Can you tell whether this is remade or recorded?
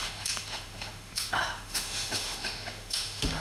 remade